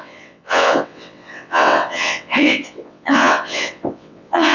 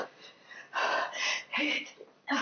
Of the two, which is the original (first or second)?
second